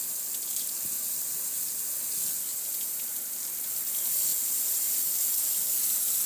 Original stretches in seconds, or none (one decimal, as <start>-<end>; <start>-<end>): 0.0-2.5; 3.3-4.3; 5.0-6.3